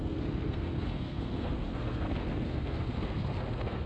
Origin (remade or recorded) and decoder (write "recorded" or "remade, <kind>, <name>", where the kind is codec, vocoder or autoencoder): remade, codec, SNAC